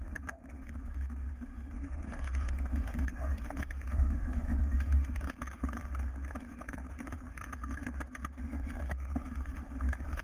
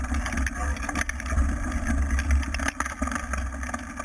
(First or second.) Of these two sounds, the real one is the second